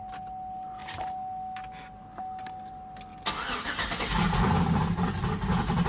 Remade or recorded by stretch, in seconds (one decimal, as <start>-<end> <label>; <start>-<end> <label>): 0.0-5.9 recorded